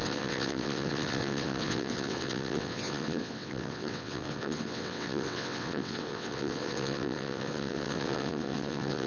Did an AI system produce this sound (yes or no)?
yes